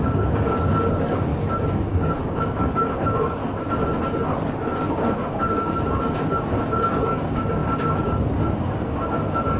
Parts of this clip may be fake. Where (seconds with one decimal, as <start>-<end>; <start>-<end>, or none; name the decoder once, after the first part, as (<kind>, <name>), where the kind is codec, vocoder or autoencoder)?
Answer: 0.0-3.4 (codec, DAC); 4.8-9.6